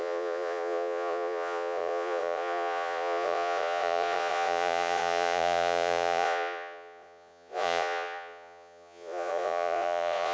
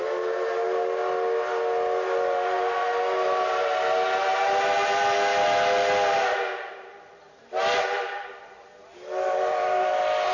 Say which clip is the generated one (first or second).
first